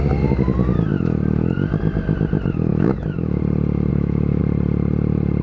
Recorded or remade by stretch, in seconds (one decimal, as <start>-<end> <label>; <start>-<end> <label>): 0.0-2.7 recorded; 2.7-3.4 remade; 3.4-3.9 recorded; 3.9-4.4 remade; 4.4-5.4 recorded